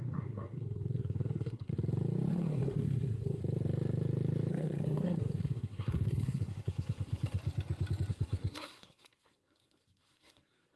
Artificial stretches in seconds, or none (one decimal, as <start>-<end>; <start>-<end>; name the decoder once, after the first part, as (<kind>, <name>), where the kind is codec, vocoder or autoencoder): 0.0-1.7 (codec, SNAC); 2.3-3.4; 4.5-7.4; 8.1-10.8